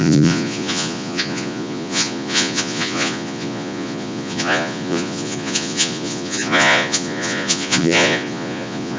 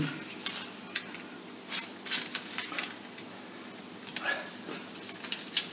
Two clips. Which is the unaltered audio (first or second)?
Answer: second